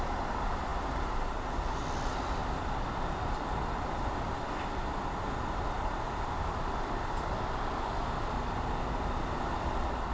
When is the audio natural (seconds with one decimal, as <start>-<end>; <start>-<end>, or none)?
0.0-10.1